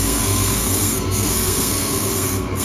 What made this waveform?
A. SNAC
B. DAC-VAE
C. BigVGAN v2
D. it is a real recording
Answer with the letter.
A